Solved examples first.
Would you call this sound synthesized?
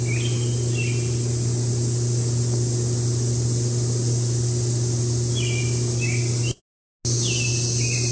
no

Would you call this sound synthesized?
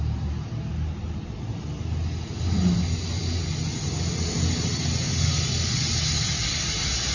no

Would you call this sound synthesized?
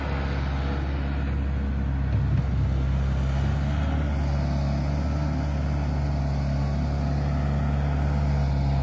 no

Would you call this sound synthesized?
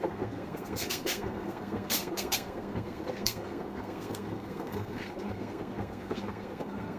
yes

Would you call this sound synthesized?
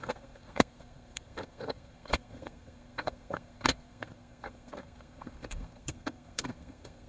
yes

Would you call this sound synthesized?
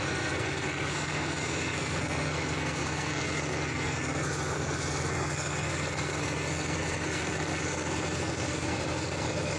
yes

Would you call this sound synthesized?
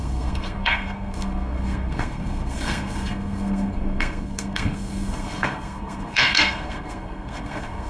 yes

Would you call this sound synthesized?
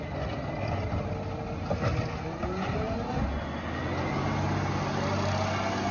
no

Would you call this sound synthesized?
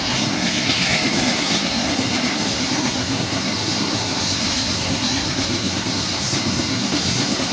yes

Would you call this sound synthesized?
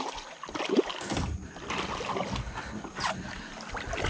no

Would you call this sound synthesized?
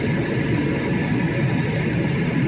no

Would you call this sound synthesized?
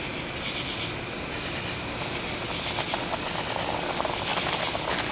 no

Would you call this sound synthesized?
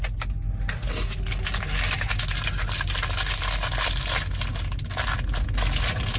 no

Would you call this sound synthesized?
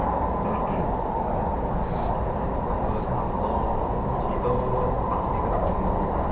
no